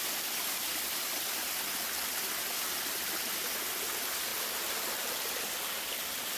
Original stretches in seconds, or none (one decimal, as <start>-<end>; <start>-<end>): 0.0-6.4